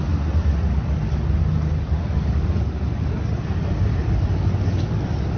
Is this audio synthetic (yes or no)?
no